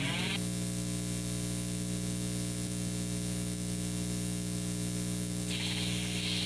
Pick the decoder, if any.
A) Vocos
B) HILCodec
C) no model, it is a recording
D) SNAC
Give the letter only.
C